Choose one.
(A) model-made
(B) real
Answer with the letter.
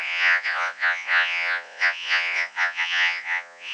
A